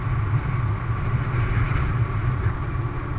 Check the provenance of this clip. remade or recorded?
recorded